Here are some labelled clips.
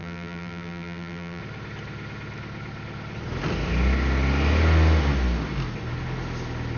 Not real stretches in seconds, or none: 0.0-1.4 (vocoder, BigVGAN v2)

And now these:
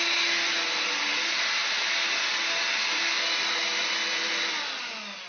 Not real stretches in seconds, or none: none

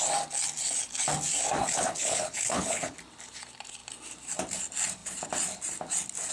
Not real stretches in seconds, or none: 1.6-3.0 (codec, HILCodec)

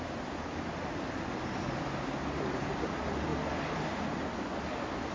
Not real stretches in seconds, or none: none

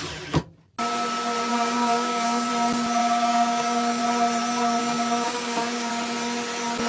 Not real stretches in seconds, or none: 1.5-2.5 (codec, DAC); 3.0-4.0; 4.8-5.9

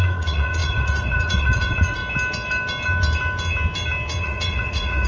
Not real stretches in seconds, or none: 0.0-2.0 (vocoder, Vocos); 4.2-5.1

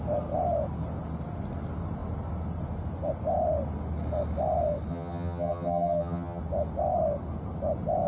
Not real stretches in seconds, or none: 4.9-6.4 (vocoder, HiFi-GAN)